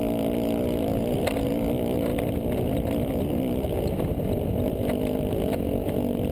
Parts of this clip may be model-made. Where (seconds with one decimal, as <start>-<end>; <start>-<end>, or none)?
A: none

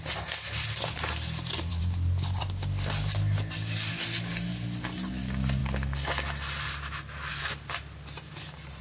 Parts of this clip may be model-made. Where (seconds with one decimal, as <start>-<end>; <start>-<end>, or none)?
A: 1.7-3.9; 4.5-5.1

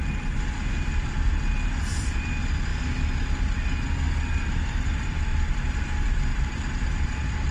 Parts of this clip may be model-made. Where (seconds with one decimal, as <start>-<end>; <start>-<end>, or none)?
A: 0.0-2.7; 4.5-5.3; 5.8-7.5

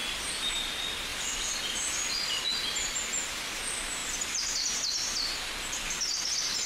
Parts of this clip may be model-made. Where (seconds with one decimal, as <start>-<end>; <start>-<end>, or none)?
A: 1.1-2.5

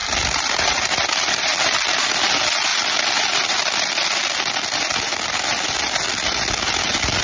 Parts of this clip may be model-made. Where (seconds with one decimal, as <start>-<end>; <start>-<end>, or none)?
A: 0.0-2.1; 2.7-6.5

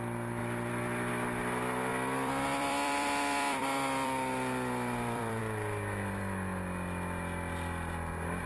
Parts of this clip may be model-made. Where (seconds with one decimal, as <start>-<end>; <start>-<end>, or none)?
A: 0.4-1.1; 1.9-5.4

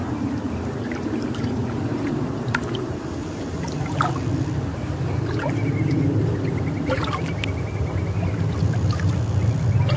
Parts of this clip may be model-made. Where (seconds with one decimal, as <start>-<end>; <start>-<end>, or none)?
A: 0.0-4.1